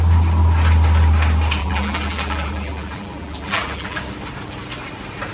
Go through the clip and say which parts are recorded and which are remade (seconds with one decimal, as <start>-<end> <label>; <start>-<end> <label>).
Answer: 0.0-1.6 recorded; 1.6-4.0 remade; 4.0-5.3 recorded